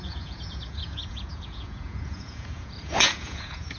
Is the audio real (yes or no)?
no